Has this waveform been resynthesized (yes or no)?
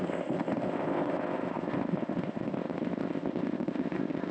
yes